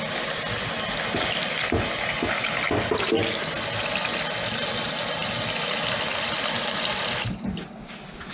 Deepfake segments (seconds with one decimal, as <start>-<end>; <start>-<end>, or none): none